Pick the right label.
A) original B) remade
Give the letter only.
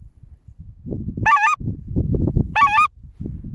A